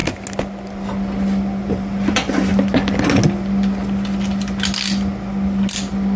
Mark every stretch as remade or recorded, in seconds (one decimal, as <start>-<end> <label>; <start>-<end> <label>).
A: 0.0-1.7 recorded; 1.7-2.5 remade; 2.5-6.2 recorded